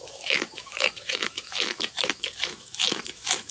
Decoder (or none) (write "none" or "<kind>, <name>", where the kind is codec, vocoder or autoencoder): autoencoder, DAC-VAE